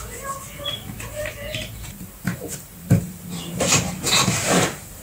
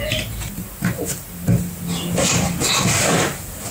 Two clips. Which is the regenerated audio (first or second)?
first